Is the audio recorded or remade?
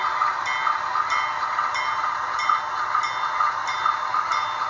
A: recorded